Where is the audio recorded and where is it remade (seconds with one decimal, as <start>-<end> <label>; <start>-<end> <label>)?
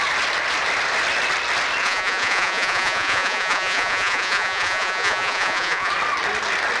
0.0-1.8 recorded; 1.8-5.9 remade; 5.9-6.8 recorded